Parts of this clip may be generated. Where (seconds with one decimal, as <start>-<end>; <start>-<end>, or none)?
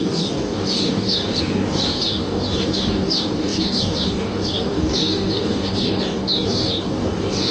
0.0-7.5